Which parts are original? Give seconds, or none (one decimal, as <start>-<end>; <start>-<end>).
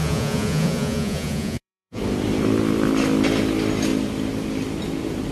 2.0-5.3